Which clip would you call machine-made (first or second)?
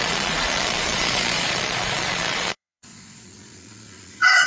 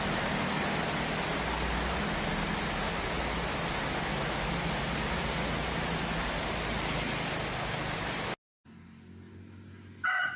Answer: first